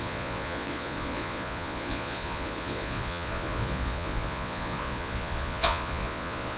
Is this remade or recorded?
remade